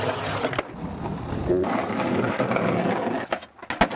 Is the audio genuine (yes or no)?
yes